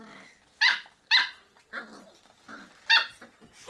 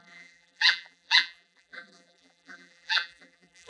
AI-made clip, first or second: second